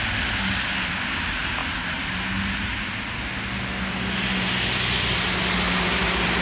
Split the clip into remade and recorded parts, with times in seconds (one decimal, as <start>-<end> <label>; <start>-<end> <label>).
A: 0.0-6.4 recorded